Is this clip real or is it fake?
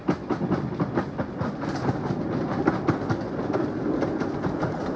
real